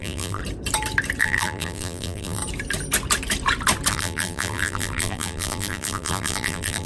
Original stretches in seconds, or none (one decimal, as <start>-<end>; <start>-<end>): 0.4-1.2; 2.4-3.9